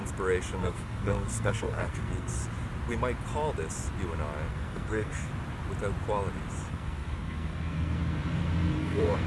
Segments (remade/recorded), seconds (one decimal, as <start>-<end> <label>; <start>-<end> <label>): 0.0-0.6 recorded; 0.6-2.4 remade; 2.4-4.5 recorded; 4.5-5.3 remade; 5.3-6.7 recorded; 6.7-9.3 remade